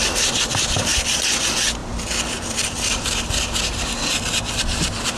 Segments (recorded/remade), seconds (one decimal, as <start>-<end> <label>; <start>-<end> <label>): 0.0-0.9 remade; 0.9-1.4 recorded; 1.4-5.2 remade